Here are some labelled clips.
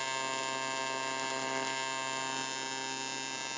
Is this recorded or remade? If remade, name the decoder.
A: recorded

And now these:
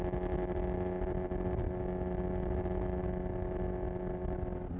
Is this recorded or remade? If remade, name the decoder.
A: recorded